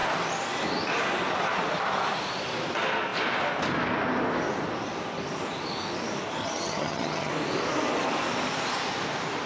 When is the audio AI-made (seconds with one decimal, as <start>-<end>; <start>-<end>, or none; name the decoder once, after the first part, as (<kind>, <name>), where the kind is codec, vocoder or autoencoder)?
6.4-7.3 (vocoder, HiFi-GAN)